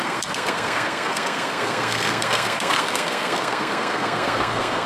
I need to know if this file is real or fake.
fake